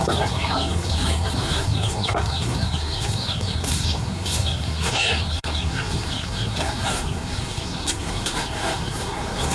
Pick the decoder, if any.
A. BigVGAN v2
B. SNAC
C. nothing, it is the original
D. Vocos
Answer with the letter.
B